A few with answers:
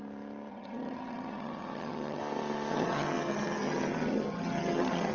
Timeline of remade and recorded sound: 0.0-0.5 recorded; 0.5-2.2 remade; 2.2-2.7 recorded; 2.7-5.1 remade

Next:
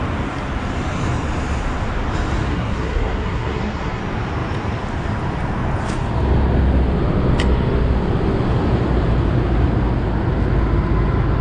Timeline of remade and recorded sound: 0.0-2.5 recorded; 2.5-4.0 remade; 4.0-11.4 recorded

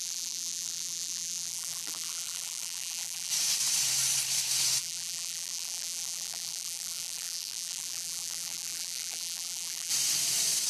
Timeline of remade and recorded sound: 0.0-3.3 remade; 3.3-4.8 recorded; 4.8-9.9 remade; 9.9-10.7 recorded

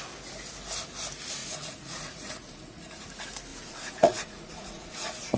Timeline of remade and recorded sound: 0.0-1.4 recorded; 1.4-3.0 remade; 3.0-3.5 recorded; 3.5-5.4 remade

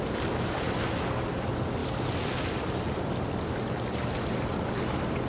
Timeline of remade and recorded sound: 0.0-1.8 recorded; 1.8-2.6 remade; 2.6-5.3 recorded

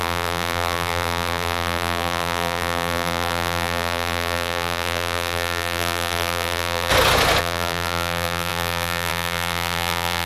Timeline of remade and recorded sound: 0.0-6.9 remade; 6.9-7.4 recorded; 7.4-10.3 remade

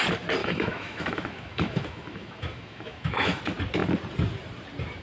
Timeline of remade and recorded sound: 0.0-0.4 recorded; 0.4-3.4 remade; 3.4-5.0 recorded

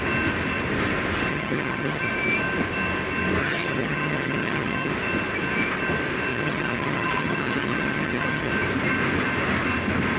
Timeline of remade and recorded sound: 0.0-1.3 recorded; 1.3-2.1 remade; 2.1-3.4 recorded; 3.4-4.9 remade; 4.9-6.3 recorded; 6.3-8.5 remade; 8.5-10.2 recorded